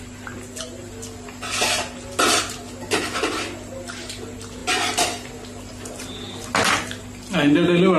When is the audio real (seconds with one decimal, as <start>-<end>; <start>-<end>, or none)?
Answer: 0.0-8.0